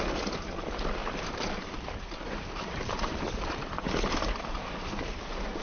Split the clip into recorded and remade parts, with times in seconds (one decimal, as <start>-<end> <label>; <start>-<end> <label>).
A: 0.0-1.0 recorded; 1.0-4.4 remade; 4.4-5.6 recorded